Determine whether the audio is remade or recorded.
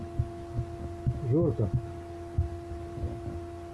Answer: recorded